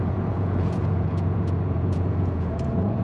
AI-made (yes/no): yes